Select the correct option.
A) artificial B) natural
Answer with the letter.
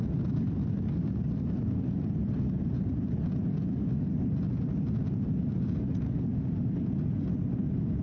B